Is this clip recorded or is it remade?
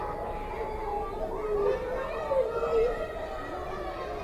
recorded